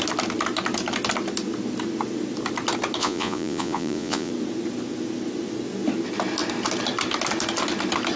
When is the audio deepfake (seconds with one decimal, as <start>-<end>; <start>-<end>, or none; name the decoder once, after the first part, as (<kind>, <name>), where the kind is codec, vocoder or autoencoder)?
3.0-4.3 (vocoder, Vocos)